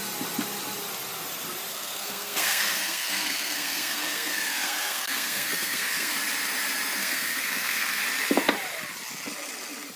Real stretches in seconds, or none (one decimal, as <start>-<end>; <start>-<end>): 0.0-1.7; 6.1-7.0; 8.0-10.0